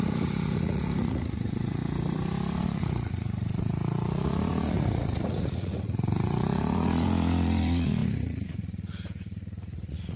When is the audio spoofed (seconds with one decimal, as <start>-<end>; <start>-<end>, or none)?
0.0-1.8; 2.6-10.2